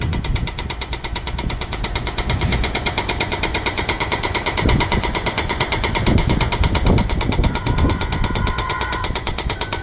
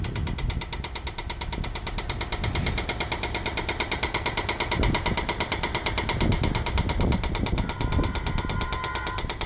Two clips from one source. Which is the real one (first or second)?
second